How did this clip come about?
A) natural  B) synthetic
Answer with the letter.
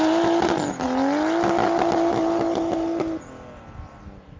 A